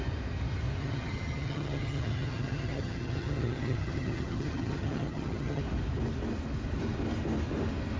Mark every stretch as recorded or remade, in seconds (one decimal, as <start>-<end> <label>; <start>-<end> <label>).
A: 0.0-0.8 recorded; 0.8-5.6 remade; 5.6-8.0 recorded